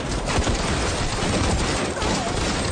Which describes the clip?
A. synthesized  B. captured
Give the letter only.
B